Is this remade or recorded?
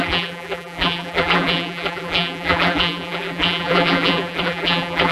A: remade